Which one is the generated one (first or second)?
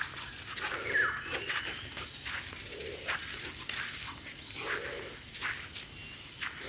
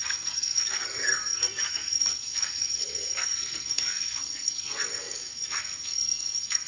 second